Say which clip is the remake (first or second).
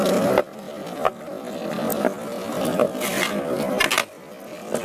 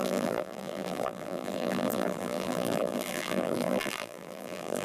second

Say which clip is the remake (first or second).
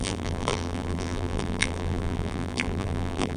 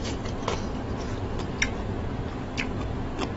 first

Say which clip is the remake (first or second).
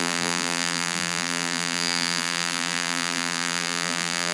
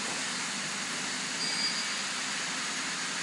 first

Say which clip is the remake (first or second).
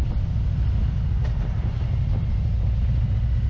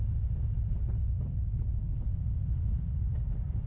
second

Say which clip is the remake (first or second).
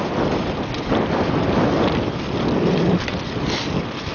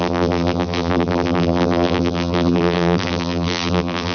second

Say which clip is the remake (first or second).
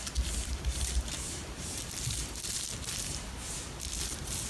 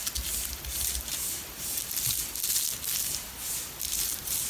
first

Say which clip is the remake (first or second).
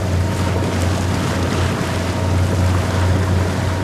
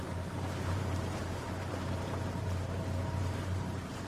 second